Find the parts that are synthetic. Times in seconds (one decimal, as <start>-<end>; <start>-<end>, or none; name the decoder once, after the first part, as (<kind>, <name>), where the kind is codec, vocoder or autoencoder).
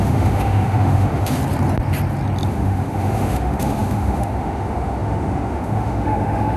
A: 0.0-1.4 (autoencoder, DAC-VAE); 2.5-6.6